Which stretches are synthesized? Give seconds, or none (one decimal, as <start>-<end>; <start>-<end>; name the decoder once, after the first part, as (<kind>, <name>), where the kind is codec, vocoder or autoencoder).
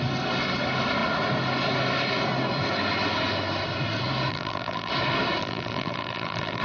4.3-4.9 (vocoder, BigVGAN v2); 5.4-6.6